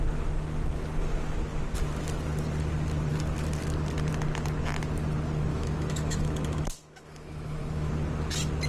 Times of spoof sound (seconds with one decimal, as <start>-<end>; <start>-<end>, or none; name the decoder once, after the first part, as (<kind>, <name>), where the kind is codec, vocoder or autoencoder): 5.5-7.9 (autoencoder, DAC-VAE)

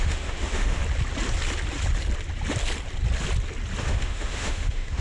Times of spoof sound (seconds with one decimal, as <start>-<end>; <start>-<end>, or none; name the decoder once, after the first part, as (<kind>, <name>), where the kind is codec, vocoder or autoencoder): 0.0-0.8 (autoencoder, DAC-VAE); 3.8-5.0

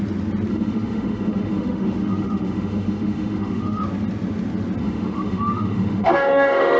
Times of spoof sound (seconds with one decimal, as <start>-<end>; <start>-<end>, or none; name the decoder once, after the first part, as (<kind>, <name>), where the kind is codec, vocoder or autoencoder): 0.5-3.8 (autoencoder, DAC-VAE); 4.8-6.8

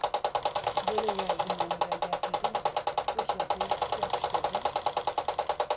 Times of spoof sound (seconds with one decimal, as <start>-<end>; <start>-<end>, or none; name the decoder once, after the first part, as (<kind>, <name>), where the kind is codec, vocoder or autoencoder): 0.6-1.4 (autoencoder, DAC-VAE)